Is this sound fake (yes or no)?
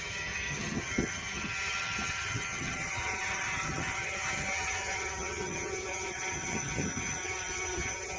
yes